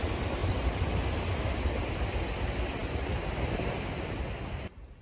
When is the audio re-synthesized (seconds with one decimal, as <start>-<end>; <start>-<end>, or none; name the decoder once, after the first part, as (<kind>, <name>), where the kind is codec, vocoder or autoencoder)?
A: none

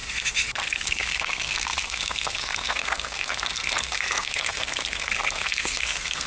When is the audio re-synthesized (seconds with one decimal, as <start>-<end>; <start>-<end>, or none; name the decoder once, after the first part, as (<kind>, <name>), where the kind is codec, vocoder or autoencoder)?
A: 0.0-6.3 (codec, SNAC)

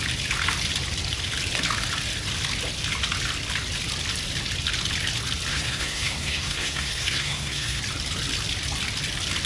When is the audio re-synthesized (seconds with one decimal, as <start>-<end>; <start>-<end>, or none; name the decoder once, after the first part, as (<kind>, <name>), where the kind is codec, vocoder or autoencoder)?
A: 5.5-7.8 (codec, SNAC)

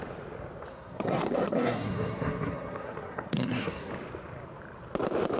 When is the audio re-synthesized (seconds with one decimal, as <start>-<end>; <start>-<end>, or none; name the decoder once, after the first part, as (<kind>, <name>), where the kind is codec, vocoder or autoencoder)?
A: 0.7-3.9 (codec, SNAC)